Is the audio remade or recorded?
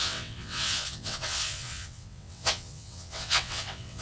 remade